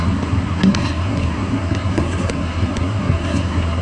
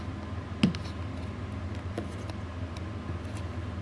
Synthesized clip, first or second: first